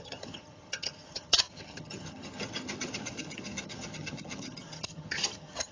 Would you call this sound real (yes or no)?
no